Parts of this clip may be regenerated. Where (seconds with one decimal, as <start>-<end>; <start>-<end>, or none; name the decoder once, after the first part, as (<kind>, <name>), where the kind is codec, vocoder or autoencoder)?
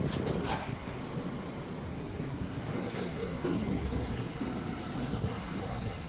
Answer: 0.4-1.0 (codec, SNAC); 1.9-4.4; 5.0-6.1